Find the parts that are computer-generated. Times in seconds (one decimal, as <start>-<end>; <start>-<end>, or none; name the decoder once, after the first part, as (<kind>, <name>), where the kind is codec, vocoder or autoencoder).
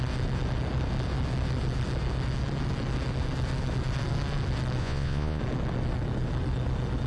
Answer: 4.8-5.4 (vocoder, Vocos)